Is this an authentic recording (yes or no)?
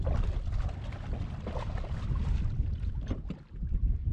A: yes